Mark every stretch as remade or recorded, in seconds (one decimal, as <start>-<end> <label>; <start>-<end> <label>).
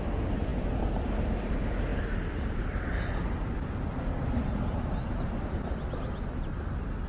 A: 0.0-7.1 recorded